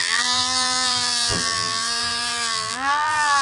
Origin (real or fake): fake